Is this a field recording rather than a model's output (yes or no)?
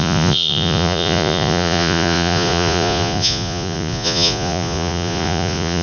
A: no